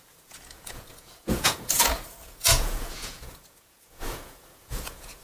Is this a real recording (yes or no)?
no